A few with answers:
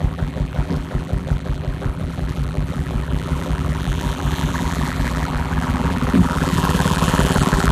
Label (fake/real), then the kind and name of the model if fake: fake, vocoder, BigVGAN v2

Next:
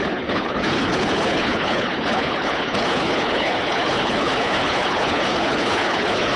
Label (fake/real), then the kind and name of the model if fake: fake, codec, HILCodec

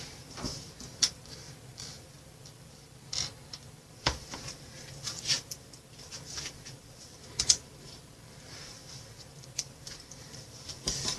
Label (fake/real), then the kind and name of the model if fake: fake, vocoder, BigVGAN v2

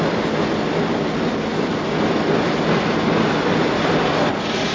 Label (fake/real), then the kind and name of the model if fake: real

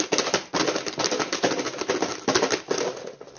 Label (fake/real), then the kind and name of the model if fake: real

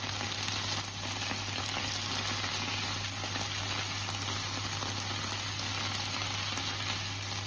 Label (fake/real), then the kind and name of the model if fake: real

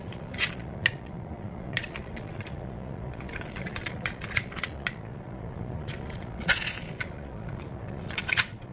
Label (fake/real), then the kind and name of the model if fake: fake, vocoder, Vocos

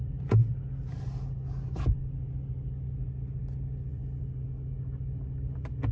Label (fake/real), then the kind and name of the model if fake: real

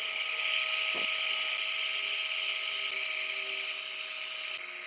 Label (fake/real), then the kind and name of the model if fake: real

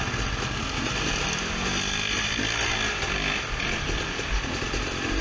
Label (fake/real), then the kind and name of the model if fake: real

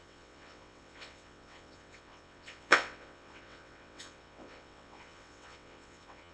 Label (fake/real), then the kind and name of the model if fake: fake, vocoder, WaveNeXt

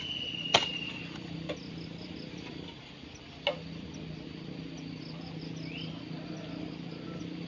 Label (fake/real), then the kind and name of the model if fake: real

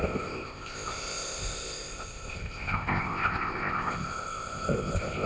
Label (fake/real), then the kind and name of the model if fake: fake, codec, ZipCodec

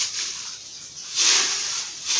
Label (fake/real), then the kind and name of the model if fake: real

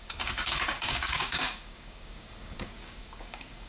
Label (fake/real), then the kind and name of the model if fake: fake, codec, DAC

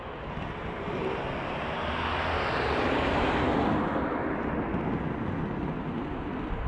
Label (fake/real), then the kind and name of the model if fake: real